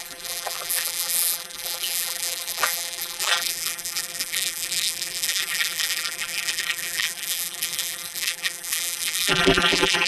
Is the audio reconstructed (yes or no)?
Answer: yes